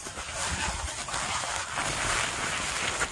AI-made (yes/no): no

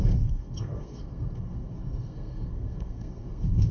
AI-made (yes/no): yes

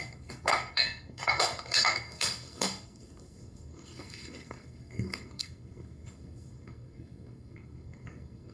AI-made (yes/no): yes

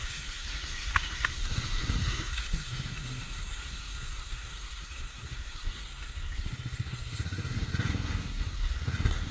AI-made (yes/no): yes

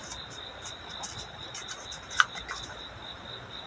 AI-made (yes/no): no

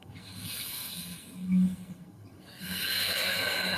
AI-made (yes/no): yes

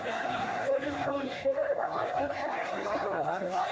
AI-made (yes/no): yes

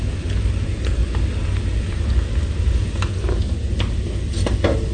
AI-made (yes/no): no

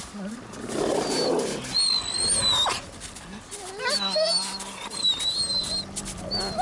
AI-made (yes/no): no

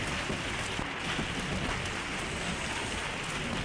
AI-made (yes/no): no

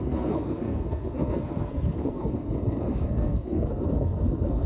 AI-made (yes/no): yes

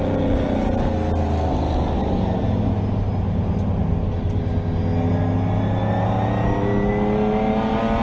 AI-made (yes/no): no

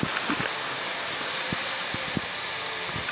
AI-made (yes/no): no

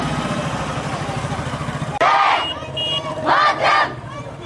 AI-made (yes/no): no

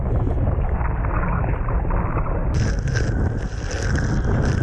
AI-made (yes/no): no